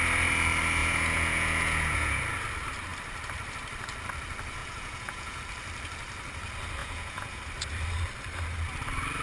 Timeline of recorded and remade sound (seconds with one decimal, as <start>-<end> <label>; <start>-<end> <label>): 0.0-0.8 recorded; 0.8-2.2 remade; 2.2-4.6 recorded; 4.6-5.4 remade; 5.4-6.8 recorded; 6.8-7.4 remade; 7.4-9.2 recorded

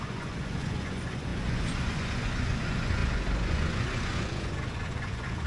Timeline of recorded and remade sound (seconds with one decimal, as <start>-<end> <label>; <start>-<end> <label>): 0.0-5.5 remade

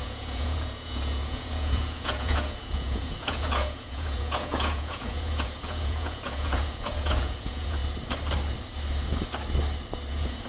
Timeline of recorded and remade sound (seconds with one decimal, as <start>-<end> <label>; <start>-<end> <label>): 0.0-7.8 remade; 7.8-10.1 recorded; 10.1-10.5 remade

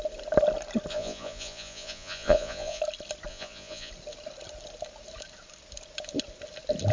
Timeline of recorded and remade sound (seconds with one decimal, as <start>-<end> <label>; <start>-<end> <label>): 0.0-0.9 recorded; 0.9-2.8 remade; 2.8-3.3 recorded; 3.3-3.9 remade; 3.9-6.9 recorded